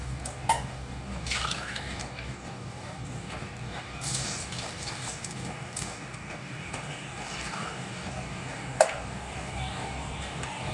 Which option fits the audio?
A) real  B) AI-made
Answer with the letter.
B